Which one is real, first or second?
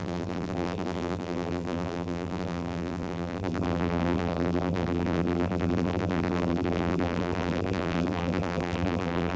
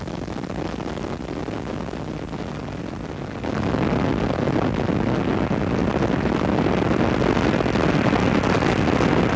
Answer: second